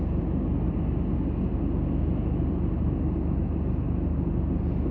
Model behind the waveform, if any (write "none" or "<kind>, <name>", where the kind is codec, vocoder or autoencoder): none